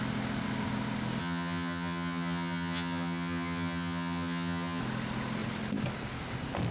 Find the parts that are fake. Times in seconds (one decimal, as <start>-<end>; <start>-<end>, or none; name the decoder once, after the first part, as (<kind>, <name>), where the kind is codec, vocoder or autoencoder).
1.2-4.8 (vocoder, HiFi-GAN)